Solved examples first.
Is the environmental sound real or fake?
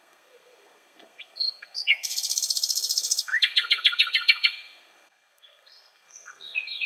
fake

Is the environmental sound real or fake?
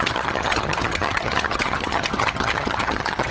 fake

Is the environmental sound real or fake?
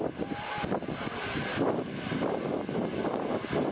real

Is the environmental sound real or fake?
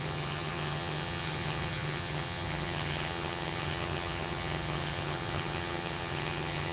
fake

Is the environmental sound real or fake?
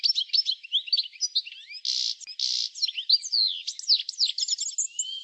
real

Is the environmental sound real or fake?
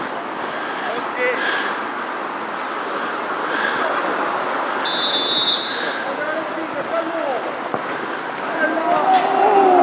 real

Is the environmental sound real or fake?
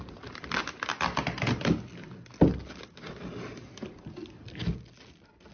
real